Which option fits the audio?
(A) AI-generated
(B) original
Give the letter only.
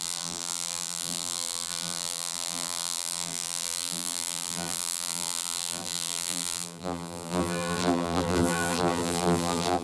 A